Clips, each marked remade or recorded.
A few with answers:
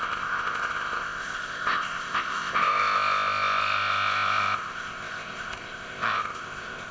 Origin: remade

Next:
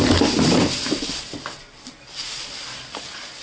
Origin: recorded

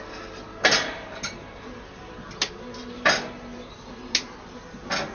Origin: recorded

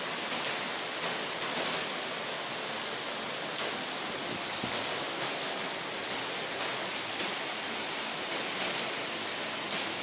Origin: recorded